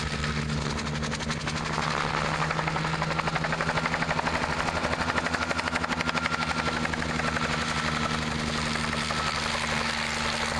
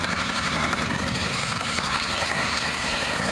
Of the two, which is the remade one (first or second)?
second